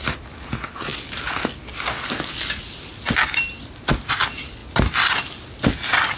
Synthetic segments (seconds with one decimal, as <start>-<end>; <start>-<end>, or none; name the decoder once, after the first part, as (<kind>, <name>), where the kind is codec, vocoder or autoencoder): none